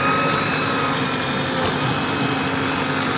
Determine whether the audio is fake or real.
real